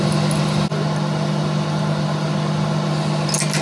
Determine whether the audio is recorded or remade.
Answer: recorded